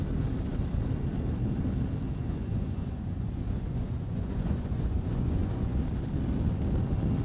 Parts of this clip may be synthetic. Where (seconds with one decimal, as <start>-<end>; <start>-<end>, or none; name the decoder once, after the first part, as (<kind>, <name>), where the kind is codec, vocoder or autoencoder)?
2.2-5.8 (vocoder, Vocos)